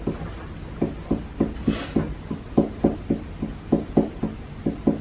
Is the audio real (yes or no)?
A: yes